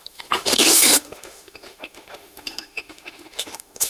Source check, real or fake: fake